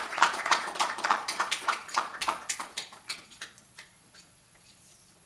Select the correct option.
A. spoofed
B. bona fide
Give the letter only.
A